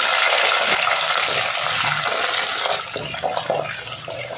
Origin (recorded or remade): recorded